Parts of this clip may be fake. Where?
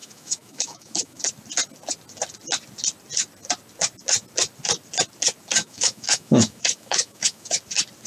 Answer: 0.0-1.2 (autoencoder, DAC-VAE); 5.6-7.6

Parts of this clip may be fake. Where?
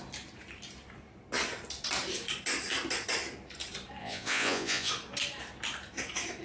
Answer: 4.0-4.9 (vocoder, Vocos)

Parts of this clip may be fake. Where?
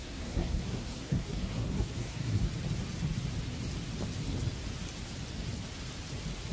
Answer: 0.0-2.4 (codec, SNAC)